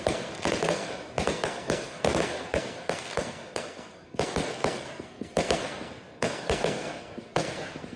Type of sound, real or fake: fake